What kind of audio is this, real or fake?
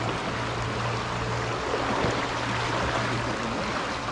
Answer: real